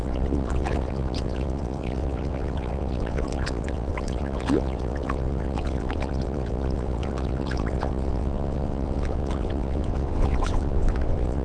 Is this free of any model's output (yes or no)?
no